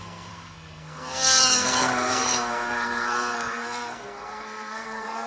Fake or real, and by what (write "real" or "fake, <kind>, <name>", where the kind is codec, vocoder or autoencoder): fake, codec, SNAC